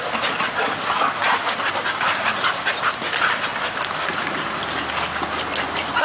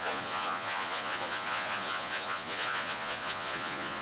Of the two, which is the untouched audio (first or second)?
first